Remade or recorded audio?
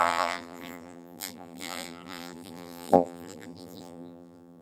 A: remade